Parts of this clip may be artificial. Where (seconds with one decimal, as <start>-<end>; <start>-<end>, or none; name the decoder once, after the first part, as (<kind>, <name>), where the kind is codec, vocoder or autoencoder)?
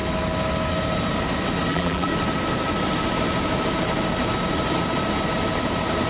1.7-2.1 (vocoder, BigVGAN v2)